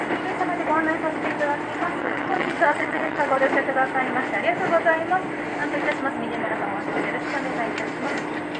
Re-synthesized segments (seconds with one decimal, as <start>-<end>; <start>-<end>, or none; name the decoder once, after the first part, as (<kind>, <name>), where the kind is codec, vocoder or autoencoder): 2.0-3.4 (vocoder, WaveNeXt)